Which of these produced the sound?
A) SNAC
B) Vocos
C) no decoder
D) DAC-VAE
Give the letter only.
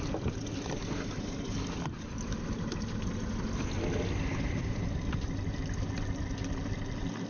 C